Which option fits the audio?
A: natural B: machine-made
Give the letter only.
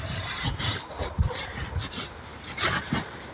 B